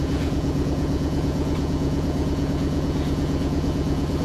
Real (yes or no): no